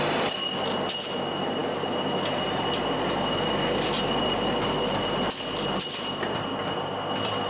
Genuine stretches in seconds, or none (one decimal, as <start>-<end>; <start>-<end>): 0.0-7.5